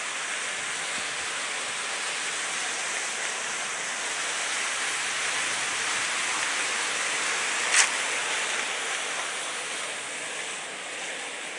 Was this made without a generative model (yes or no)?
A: yes